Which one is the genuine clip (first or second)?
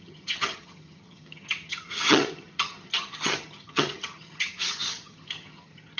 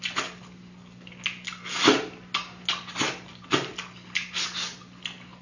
second